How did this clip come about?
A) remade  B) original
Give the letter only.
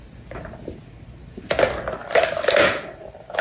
B